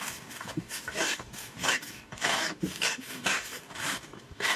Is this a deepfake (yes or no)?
yes